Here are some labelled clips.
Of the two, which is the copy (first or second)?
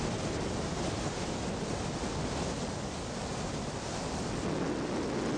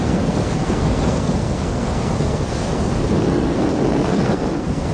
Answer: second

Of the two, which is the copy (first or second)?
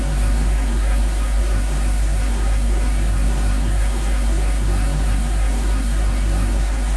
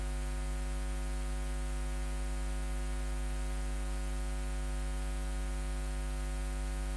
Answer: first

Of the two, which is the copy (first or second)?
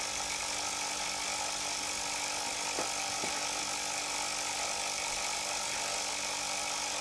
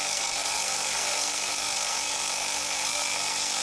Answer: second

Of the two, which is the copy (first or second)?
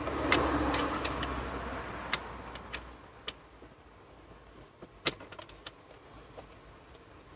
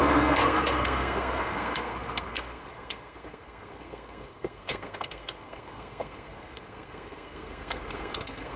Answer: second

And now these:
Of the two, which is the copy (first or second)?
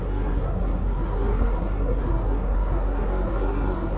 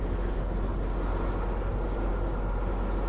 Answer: first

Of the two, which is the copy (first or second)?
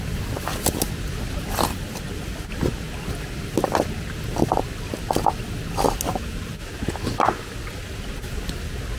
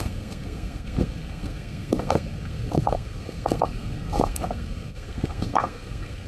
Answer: second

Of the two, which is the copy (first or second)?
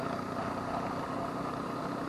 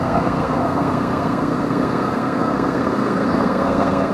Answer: second